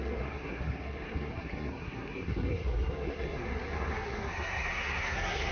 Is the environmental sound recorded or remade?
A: remade